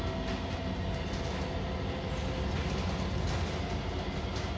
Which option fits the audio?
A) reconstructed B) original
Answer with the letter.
B